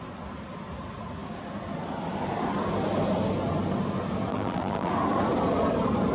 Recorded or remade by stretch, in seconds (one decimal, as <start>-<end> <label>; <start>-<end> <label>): 0.0-4.3 recorded; 4.3-4.9 remade; 4.9-6.1 recorded